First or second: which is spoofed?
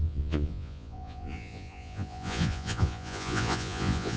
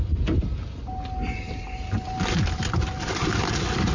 first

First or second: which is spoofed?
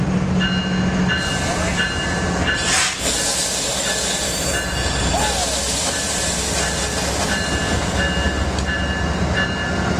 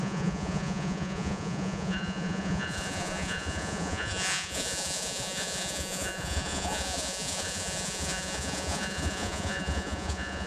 second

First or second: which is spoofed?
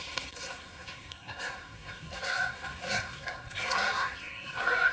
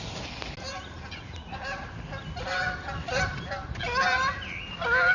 first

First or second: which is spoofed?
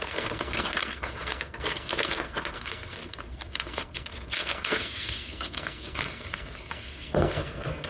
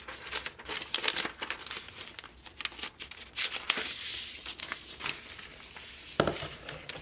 first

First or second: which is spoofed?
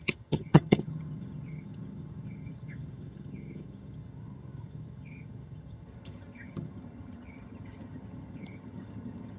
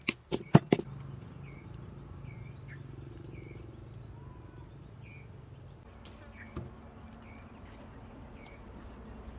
first